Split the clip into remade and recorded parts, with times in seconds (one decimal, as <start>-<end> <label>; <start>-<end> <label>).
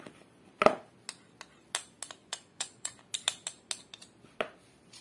0.0-2.2 recorded; 2.2-3.0 remade; 3.0-5.0 recorded